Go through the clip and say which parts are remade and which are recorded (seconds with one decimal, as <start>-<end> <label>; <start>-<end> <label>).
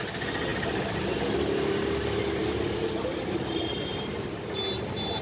0.0-0.5 recorded; 0.5-1.1 remade; 1.1-5.2 recorded